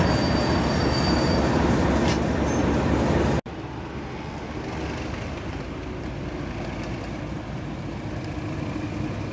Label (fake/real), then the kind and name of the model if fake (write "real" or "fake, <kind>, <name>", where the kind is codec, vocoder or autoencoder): real